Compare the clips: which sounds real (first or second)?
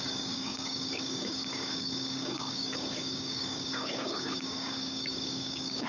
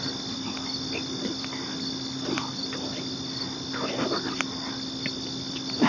second